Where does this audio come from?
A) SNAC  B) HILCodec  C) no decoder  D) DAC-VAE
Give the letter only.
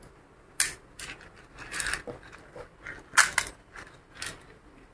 C